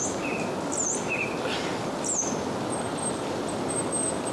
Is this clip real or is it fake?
real